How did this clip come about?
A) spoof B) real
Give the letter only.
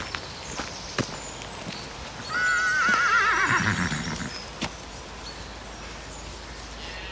B